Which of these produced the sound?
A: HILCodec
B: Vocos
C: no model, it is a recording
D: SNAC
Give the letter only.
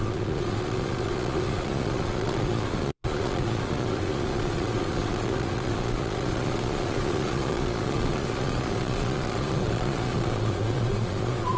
B